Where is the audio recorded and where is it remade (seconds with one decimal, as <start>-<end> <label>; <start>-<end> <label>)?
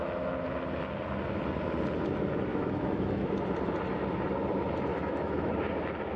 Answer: 0.0-2.5 recorded; 2.5-3.3 remade; 3.3-4.9 recorded; 4.9-5.5 remade; 5.5-6.2 recorded